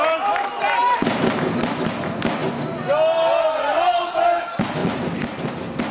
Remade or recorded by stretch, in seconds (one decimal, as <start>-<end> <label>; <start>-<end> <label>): 0.0-5.9 recorded